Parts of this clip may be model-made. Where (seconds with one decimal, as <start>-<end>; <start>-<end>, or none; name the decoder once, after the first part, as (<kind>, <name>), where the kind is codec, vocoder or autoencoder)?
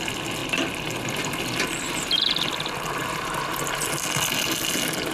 none